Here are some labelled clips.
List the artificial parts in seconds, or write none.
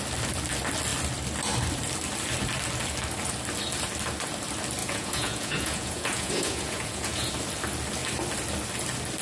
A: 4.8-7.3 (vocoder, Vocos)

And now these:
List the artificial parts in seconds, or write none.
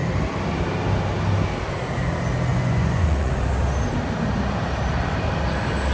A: 2.5-3.3 (vocoder, Vocos)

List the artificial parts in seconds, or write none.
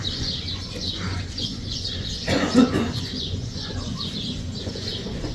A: 0.0-5.3 (vocoder, Vocos)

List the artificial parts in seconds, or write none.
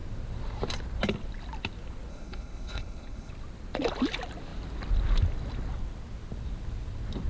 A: 2.1-3.3 (codec, HILCodec)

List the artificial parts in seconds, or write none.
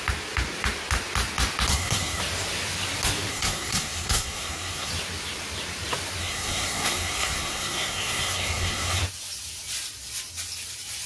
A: 1.7-2.2 (codec, SNAC); 3.3-4.9; 6.2-9.0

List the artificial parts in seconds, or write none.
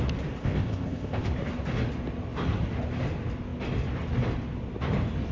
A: 0.4-1.3 (codec, ZipCodec)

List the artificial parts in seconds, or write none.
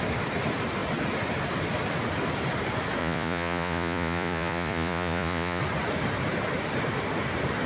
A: 3.0-5.6 (vocoder, Vocos)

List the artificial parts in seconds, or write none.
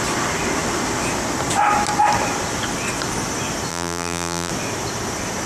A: 3.7-4.5 (vocoder, BigVGAN v2)